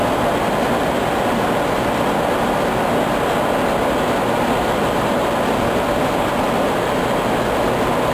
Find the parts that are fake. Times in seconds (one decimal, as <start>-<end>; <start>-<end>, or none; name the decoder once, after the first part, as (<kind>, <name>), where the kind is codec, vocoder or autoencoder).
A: none